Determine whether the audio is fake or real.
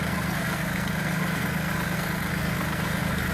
fake